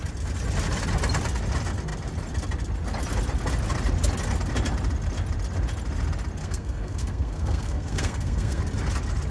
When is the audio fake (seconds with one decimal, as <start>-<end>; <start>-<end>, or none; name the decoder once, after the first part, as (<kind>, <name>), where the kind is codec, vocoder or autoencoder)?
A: 6.4-8.6 (codec, SNAC)